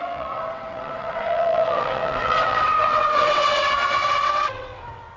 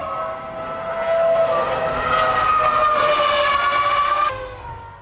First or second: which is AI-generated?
first